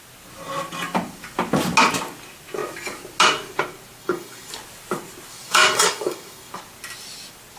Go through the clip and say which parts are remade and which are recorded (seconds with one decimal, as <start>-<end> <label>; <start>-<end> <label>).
0.0-4.0 recorded; 4.0-4.5 remade; 4.5-5.3 recorded; 5.3-6.5 remade; 6.5-7.6 recorded